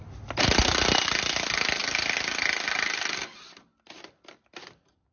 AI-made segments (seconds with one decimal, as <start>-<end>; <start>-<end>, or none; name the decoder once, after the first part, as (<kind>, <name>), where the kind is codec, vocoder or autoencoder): none